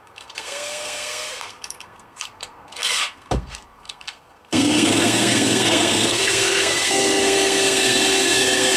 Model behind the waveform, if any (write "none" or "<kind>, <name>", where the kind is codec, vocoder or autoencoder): codec, SNAC